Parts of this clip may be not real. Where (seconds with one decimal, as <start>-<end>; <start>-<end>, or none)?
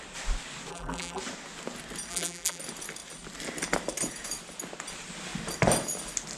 0.7-1.2; 2.1-2.6